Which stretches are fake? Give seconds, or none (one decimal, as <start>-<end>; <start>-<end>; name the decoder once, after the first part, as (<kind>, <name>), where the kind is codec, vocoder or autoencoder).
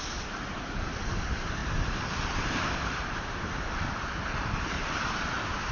1.6-5.0 (vocoder, BigVGAN v2)